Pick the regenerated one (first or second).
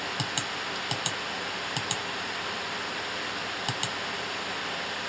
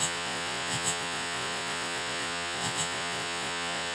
second